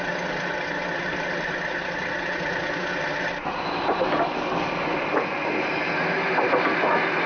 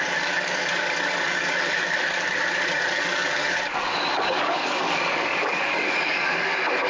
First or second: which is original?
first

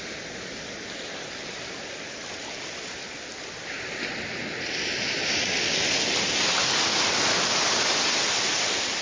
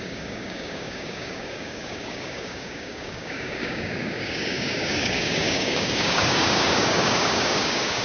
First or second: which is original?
first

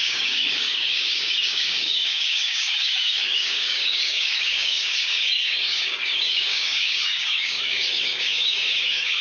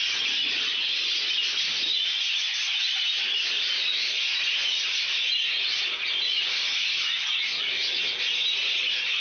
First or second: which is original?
second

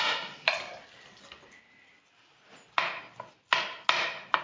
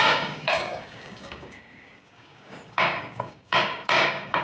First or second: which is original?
first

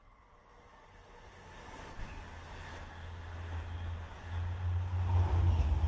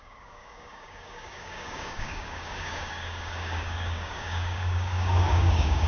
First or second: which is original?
first